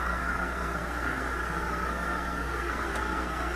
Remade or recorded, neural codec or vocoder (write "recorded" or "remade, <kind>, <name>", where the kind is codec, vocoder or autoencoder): remade, codec, SNAC